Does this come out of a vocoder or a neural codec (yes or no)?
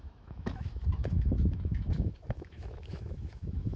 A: yes